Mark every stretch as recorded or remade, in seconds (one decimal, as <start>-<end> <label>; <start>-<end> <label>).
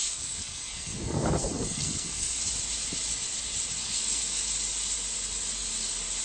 0.0-2.4 remade; 2.4-3.8 recorded; 3.8-4.4 remade; 4.4-6.2 recorded